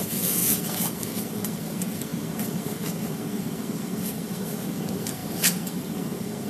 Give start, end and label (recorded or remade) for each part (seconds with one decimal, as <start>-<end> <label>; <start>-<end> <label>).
0.0-6.5 remade